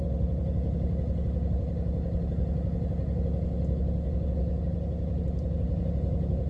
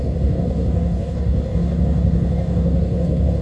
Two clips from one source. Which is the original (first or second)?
first